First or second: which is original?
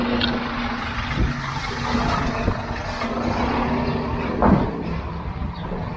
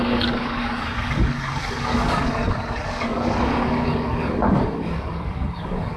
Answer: first